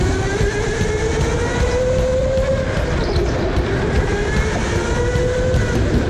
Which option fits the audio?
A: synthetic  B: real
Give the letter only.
B